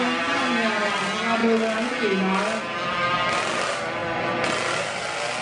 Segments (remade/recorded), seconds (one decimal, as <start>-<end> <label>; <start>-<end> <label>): 0.0-5.4 recorded